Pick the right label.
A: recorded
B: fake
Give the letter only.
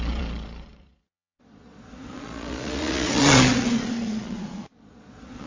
B